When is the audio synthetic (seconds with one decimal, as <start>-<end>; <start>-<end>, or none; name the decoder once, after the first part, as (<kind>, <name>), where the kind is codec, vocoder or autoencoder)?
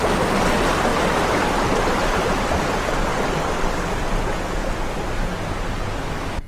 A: 0.9-2.2 (vocoder, BigVGAN v2); 3.1-5.1